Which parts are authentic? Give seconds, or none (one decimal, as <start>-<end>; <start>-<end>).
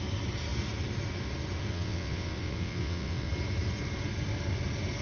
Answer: 0.0-1.7; 3.3-5.0